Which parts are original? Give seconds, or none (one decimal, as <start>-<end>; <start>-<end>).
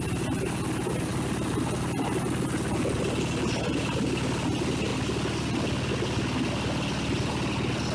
0.0-7.9